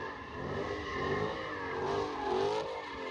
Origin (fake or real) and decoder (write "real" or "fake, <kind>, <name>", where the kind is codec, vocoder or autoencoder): real